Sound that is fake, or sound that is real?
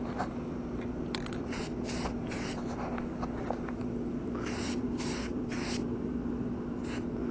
real